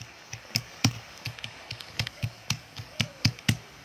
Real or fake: fake